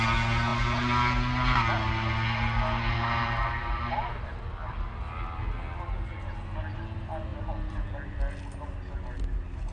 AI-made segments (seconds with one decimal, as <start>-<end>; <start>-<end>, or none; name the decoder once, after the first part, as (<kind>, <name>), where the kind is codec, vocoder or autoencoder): none